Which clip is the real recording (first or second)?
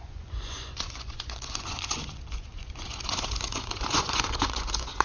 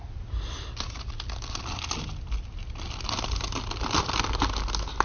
second